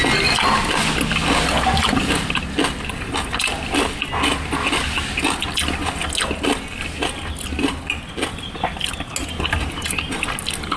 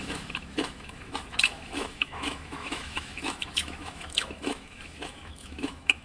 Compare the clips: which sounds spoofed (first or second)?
second